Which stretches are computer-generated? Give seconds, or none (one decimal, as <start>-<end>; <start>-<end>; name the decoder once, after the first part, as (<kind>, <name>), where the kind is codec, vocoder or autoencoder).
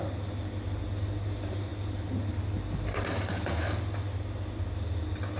none